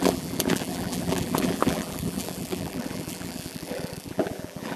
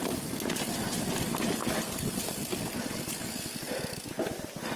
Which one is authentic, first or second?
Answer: second